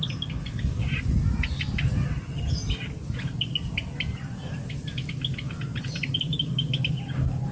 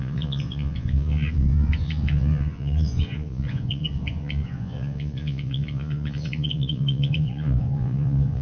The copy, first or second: second